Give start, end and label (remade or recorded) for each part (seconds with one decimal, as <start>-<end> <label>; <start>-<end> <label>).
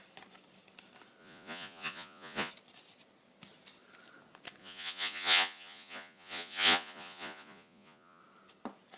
0.0-1.2 recorded; 1.2-2.5 remade; 2.5-4.6 recorded; 4.6-8.2 remade; 8.2-9.0 recorded